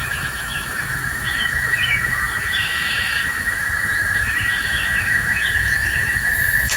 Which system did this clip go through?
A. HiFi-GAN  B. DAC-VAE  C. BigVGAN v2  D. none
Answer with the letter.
B